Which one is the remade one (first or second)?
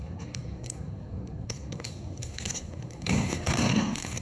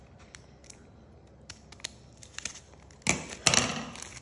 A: first